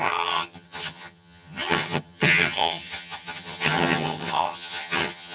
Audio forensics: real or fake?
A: fake